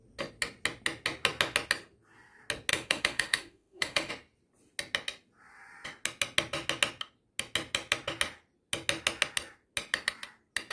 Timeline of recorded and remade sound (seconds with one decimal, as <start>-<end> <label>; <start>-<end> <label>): 0.0-2.7 recorded; 2.7-4.1 remade; 4.1-10.7 recorded